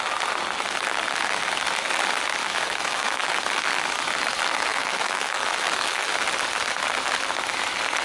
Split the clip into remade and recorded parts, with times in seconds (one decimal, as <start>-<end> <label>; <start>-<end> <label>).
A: 0.0-2.4 recorded; 2.4-3.3 remade; 3.3-4.7 recorded; 4.7-6.1 remade; 6.1-8.0 recorded